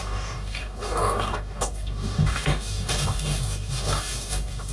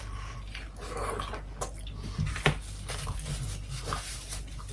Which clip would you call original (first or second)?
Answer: second